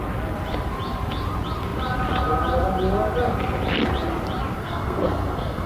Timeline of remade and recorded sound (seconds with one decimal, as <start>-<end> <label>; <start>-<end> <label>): 0.0-4.6 recorded; 4.6-5.7 remade